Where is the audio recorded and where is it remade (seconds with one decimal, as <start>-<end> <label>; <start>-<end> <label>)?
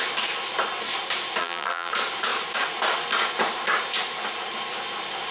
0.0-1.4 recorded; 1.4-1.9 remade; 1.9-5.3 recorded